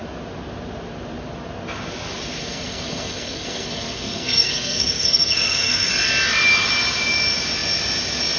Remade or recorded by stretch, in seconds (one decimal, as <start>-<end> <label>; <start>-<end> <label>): 0.0-2.4 recorded; 2.4-5.9 remade; 5.9-8.4 recorded